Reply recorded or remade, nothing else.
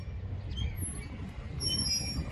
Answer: recorded